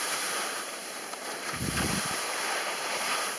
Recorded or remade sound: remade